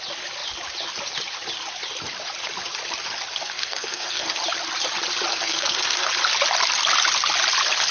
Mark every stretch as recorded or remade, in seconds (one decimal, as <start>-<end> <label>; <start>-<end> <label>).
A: 0.0-3.4 recorded; 3.4-4.4 remade; 4.4-5.3 recorded; 5.3-6.1 remade; 6.1-7.9 recorded